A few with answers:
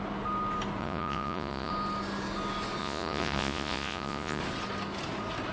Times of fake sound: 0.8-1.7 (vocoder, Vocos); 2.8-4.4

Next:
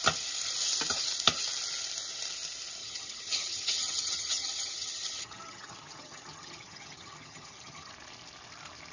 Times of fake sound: 2.8-7.9 (vocoder, HiFi-GAN)

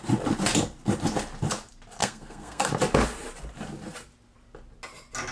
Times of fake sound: 2.0-2.7 (codec, SNAC)

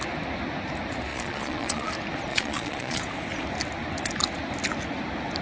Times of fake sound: 1.1-1.9 (vocoder, Vocos); 2.3-3.0

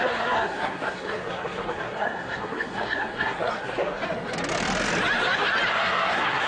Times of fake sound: 0.0-4.0 (codec, SNAC); 5.7-6.5

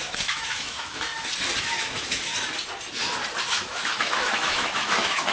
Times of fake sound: 0.0-1.1 (autoencoder, DAC-VAE); 1.6-2.3; 3.5-5.3

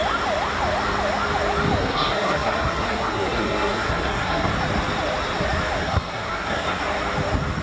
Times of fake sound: 1.8-4.5 (codec, SNAC); 5.8-6.8